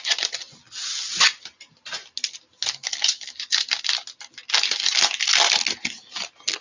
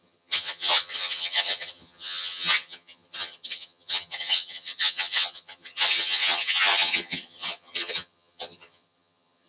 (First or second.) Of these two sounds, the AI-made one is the second